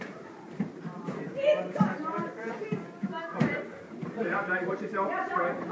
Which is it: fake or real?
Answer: fake